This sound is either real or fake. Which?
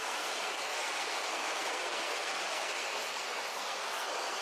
fake